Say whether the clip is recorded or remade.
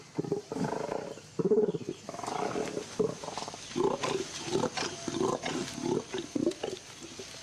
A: recorded